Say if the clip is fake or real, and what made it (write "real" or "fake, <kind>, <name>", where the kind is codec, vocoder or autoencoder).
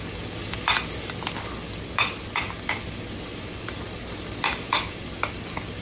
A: real